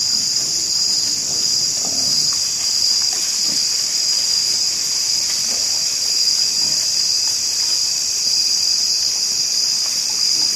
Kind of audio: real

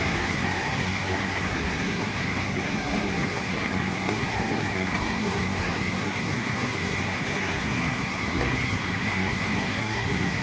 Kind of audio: fake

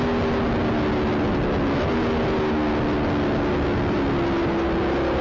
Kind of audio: real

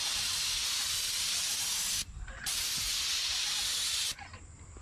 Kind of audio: real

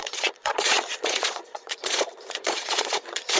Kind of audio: fake